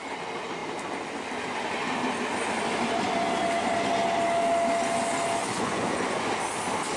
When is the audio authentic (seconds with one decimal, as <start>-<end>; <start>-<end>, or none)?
0.0-5.4; 6.3-7.0